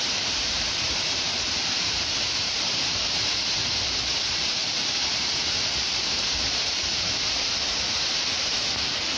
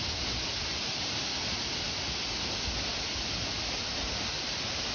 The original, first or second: second